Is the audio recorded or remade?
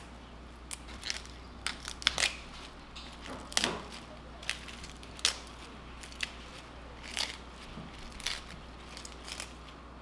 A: recorded